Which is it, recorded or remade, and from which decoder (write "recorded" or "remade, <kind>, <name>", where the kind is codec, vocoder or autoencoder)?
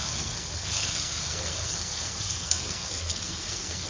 remade, codec, SNAC